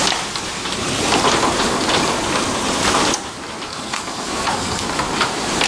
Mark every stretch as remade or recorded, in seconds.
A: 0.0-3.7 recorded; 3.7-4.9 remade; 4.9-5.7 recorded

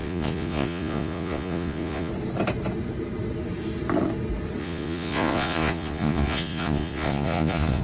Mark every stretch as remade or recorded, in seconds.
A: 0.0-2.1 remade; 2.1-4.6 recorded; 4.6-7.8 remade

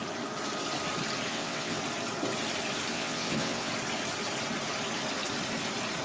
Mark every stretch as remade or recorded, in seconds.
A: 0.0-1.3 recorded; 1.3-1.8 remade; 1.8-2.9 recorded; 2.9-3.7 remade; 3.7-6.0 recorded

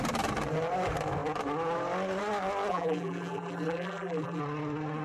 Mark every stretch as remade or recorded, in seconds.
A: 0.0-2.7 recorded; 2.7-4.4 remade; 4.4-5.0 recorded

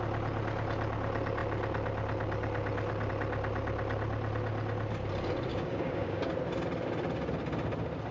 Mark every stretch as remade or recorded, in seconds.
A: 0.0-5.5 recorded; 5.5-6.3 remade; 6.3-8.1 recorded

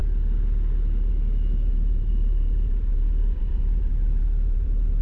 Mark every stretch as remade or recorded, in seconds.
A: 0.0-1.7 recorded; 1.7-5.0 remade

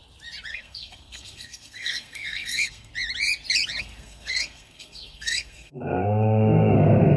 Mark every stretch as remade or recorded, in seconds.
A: 0.0-0.5 recorded; 0.5-2.9 remade; 2.9-3.8 recorded; 3.8-7.2 remade

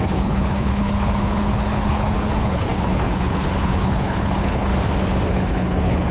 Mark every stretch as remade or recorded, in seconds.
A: 0.0-4.7 remade; 4.7-5.3 recorded; 5.3-6.1 remade